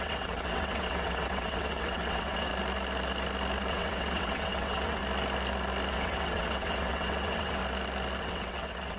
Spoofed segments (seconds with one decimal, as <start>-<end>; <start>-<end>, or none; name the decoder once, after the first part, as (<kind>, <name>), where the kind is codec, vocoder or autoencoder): 0.0-2.5 (vocoder, WaveNeXt); 3.7-5.0; 5.9-7.6; 8.2-9.0